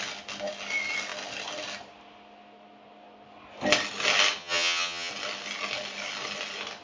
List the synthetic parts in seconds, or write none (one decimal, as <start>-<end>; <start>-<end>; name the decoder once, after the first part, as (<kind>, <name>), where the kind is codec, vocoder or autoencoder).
4.4-5.1 (vocoder, HiFi-GAN)